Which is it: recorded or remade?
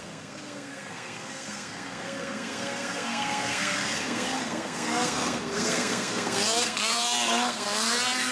remade